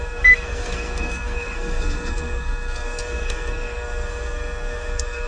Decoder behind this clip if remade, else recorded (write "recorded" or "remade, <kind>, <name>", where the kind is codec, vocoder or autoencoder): remade, codec, SNAC